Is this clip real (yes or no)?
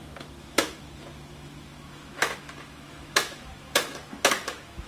no